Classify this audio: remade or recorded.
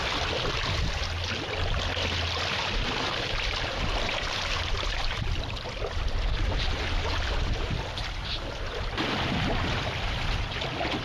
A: recorded